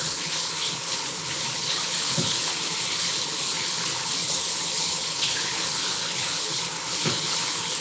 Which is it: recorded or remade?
remade